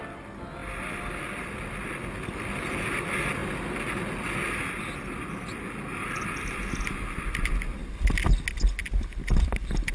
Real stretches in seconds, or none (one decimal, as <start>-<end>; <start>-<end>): 0.0-9.9